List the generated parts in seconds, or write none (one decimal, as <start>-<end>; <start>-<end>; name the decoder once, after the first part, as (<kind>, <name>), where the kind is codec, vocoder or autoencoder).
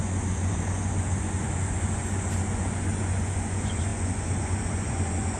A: 0.0-5.4 (vocoder, Vocos)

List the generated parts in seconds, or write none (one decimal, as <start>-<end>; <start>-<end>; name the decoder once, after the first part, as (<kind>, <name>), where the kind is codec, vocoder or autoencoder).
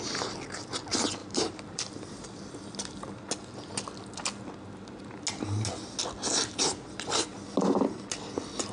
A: 1.2-2.4 (vocoder, BigVGAN v2)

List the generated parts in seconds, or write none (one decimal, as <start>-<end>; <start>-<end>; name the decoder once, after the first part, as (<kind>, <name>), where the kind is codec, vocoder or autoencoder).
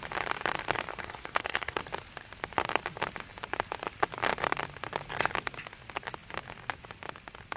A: 0.9-1.8 (codec, SNAC)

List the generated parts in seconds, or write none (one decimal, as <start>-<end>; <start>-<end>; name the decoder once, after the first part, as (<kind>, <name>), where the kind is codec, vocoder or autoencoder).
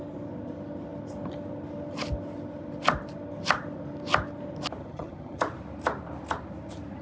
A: 4.8-5.4 (vocoder, HiFi-GAN)